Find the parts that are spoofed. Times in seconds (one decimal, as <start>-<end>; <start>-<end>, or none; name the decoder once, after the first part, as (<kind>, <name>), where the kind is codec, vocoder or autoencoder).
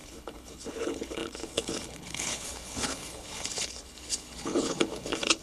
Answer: 0.0-5.4 (codec, HILCodec)